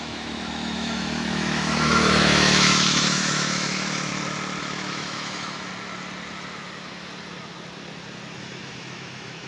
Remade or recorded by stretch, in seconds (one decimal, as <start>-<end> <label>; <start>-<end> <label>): 0.0-4.1 remade; 4.1-4.6 recorded; 4.6-5.7 remade; 5.7-8.4 recorded; 8.4-9.5 remade